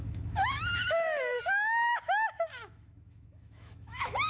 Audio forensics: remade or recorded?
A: remade